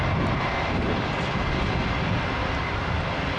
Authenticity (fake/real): real